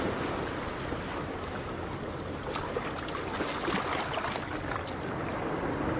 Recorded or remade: recorded